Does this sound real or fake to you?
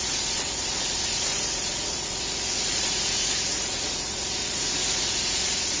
fake